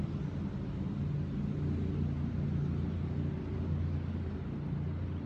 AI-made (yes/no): no